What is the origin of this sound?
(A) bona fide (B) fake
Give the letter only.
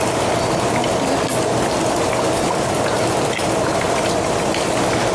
A